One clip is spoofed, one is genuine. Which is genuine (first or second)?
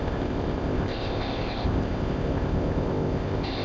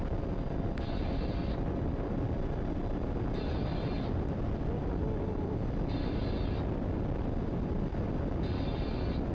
second